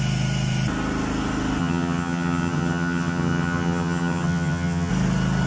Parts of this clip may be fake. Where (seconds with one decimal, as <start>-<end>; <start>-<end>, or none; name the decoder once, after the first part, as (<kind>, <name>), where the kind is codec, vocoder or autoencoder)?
1.6-4.9 (vocoder, HiFi-GAN)